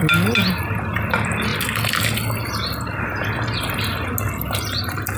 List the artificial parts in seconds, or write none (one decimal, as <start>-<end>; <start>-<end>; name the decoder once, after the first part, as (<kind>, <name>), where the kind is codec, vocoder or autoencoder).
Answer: none